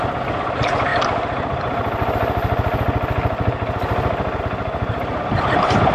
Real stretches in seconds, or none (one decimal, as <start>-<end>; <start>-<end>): 0.0-5.9